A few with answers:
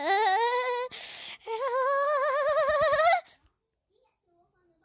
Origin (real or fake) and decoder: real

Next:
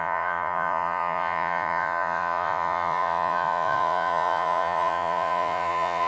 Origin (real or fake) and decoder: fake, vocoder, Vocos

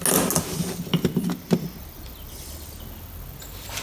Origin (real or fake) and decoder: real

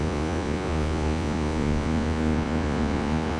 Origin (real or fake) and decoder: fake, vocoder, Vocos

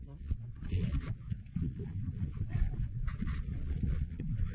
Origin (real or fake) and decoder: fake, vocoder, Vocos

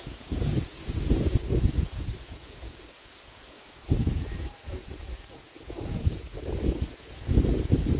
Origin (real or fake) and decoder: fake, vocoder, Vocos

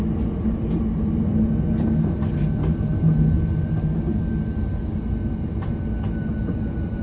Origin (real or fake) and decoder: real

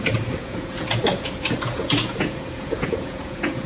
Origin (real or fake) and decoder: fake, vocoder, Vocos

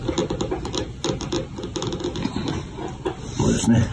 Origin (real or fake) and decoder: real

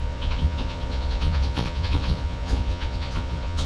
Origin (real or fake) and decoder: fake, vocoder, Vocos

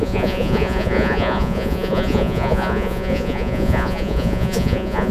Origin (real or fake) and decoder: fake, vocoder, Vocos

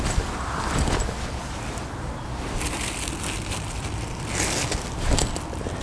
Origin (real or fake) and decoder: real